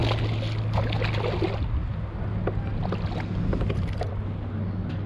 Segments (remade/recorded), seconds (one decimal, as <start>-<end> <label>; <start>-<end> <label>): 0.0-5.1 recorded